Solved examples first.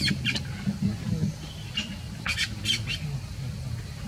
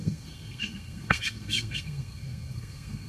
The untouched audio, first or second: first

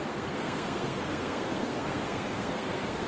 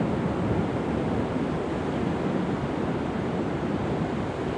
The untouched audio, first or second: second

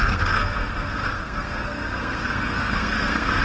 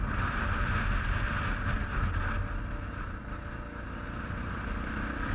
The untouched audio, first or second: second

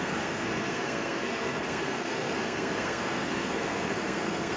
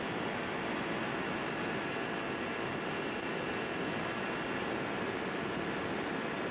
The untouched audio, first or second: second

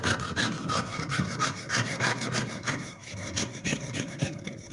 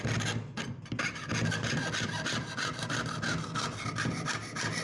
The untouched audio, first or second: second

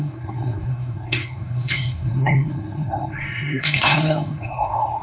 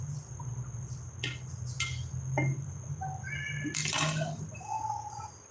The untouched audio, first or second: second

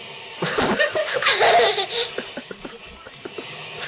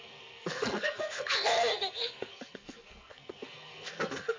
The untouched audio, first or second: first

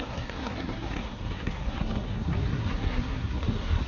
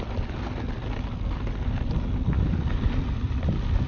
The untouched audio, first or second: second